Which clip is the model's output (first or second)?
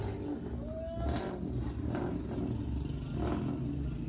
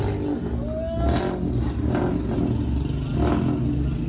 first